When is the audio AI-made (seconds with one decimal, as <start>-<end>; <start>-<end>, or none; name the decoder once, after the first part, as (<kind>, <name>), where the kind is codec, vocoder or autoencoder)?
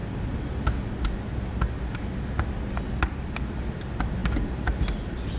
none